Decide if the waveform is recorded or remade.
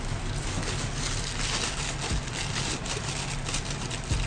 recorded